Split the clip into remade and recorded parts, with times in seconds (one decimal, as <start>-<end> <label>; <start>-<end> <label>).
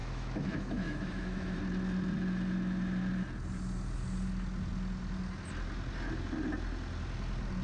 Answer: 0.0-1.6 remade; 1.6-7.6 recorded